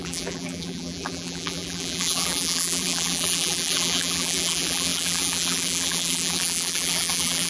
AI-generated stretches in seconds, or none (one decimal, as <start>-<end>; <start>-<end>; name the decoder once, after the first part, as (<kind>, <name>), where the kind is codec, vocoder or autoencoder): 0.0-7.5 (vocoder, BigVGAN v2)

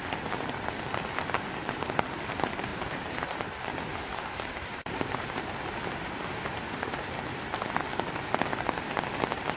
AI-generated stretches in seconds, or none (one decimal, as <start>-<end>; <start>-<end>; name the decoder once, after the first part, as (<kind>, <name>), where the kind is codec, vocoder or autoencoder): 2.7-7.0 (vocoder, BigVGAN v2)

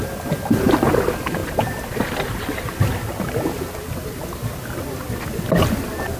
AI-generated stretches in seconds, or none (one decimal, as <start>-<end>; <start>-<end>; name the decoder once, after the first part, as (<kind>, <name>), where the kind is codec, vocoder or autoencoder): none

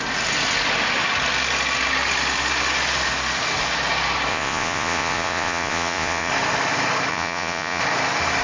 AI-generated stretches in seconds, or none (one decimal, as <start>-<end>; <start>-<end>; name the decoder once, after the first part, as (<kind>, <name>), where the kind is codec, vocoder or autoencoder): 4.3-6.3 (vocoder, Vocos); 7.1-7.8

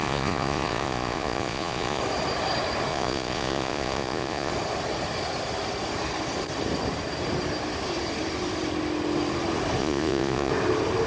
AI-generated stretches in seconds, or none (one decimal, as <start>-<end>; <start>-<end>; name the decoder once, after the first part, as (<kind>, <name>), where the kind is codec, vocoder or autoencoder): 0.0-2.0 (vocoder, Vocos); 2.9-4.5; 9.8-10.5